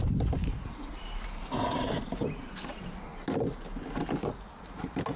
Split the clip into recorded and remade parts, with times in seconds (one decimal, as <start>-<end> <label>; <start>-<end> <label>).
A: 0.0-3.1 remade; 3.1-4.2 recorded; 4.2-5.2 remade

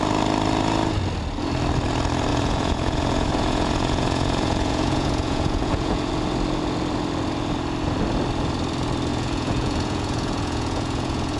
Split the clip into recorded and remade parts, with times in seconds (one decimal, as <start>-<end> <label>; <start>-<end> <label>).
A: 0.0-2.3 recorded; 2.3-6.1 remade; 6.1-9.1 recorded; 9.1-11.4 remade